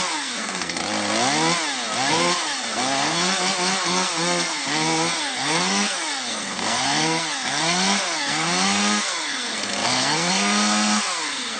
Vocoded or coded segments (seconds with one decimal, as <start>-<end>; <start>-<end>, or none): 0.0-0.8; 2.1-11.6